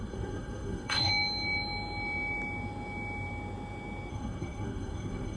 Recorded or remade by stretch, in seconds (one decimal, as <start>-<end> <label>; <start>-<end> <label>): 0.0-1.1 remade; 1.1-4.1 recorded; 4.1-5.4 remade